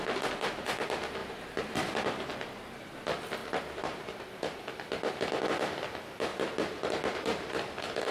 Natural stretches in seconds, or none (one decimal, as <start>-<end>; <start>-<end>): 0.0-1.2; 1.8-2.3; 2.8-3.4; 4.3-6.3; 7.5-8.1